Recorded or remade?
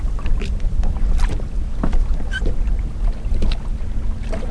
recorded